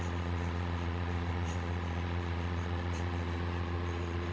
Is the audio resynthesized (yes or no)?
yes